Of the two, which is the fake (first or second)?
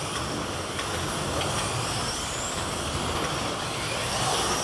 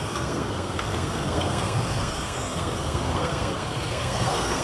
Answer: second